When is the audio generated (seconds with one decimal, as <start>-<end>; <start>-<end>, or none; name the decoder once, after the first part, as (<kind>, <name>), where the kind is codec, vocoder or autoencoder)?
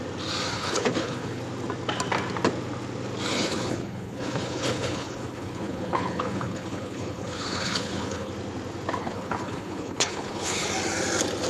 0.5-1.4 (codec, HILCodec); 3.3-8.3; 9.0-10.7